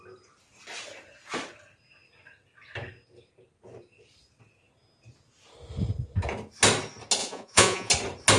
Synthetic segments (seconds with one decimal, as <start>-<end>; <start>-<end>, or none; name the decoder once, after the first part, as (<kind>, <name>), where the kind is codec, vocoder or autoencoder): 7.2-7.9 (vocoder, Vocos)